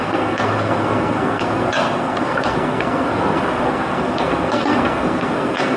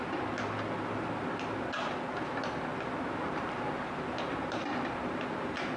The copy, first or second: first